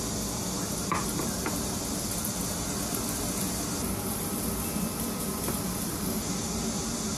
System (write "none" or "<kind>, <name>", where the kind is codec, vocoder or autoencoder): none